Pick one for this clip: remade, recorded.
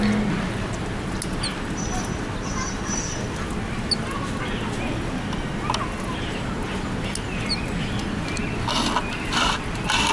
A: recorded